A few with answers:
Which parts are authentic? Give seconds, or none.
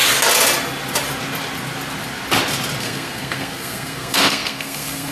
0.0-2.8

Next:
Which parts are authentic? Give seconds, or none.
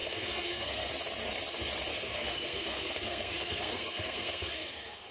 0.9-1.9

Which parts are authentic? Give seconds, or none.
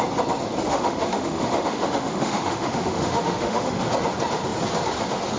0.0-0.7; 3.7-5.4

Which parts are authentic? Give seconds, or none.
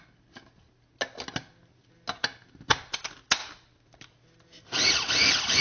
0.0-5.6